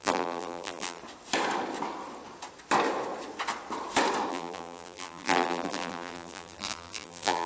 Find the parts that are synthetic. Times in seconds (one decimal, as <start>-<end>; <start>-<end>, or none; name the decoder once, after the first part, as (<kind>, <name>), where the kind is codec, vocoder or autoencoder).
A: 0.0-1.0 (vocoder, BigVGAN v2); 4.3-7.5